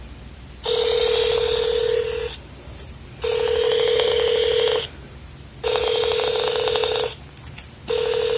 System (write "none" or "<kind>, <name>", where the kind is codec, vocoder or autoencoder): none